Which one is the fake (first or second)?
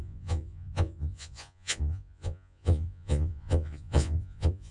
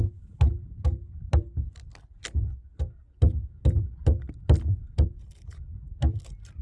first